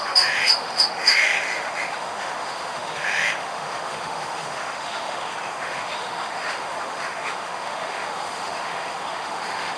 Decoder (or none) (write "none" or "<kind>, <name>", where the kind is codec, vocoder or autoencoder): autoencoder, DAC-VAE